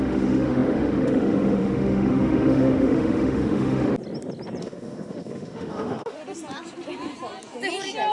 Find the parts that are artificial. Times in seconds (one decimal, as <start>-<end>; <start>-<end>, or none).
0.0-3.9; 4.6-6.2